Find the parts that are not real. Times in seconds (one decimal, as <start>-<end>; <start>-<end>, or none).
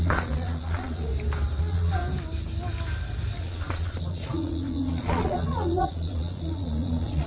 0.0-1.1; 1.6-2.0; 3.4-7.3